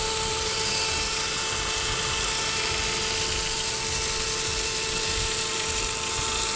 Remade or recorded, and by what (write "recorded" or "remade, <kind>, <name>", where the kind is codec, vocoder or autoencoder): recorded